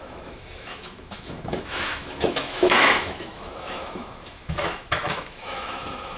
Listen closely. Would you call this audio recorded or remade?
remade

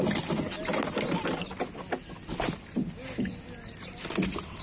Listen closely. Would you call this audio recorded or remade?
recorded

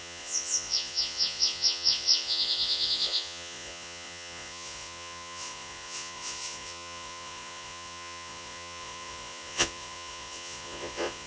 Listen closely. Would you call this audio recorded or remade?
remade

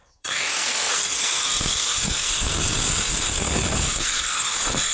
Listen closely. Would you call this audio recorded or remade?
remade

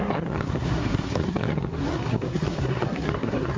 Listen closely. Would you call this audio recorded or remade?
remade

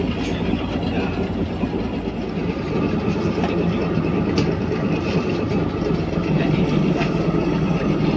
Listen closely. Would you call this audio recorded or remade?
recorded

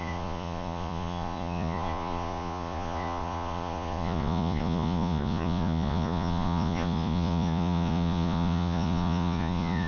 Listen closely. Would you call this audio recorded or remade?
remade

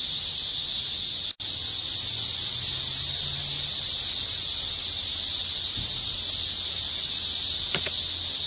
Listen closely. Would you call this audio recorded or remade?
recorded